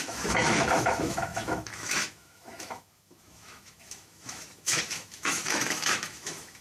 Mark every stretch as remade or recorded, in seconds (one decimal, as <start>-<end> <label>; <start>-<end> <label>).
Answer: 0.0-6.6 remade